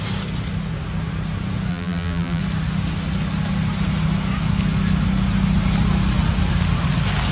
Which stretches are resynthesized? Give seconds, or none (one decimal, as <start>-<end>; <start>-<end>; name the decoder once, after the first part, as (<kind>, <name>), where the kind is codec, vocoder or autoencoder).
1.7-2.4 (vocoder, BigVGAN v2)